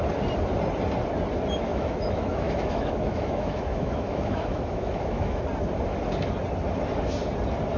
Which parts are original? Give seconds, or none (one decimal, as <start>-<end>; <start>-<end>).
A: 0.0-1.7; 5.4-7.8